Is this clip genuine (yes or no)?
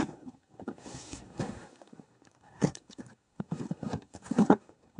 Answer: no